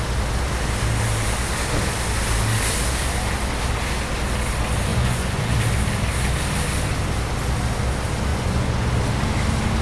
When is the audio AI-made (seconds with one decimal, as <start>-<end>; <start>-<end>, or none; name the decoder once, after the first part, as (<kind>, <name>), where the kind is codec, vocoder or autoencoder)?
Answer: 4.9-5.5 (vocoder, Vocos); 8.3-8.9